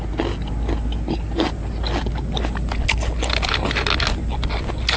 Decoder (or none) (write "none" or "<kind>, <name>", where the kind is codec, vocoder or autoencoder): none